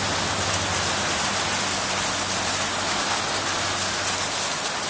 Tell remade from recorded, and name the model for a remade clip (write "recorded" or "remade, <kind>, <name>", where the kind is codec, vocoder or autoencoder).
recorded